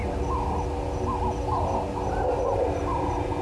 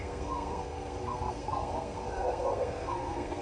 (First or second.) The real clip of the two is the first